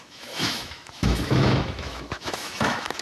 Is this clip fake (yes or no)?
yes